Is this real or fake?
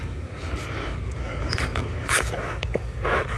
fake